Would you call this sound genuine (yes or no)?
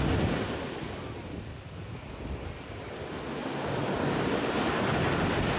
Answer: yes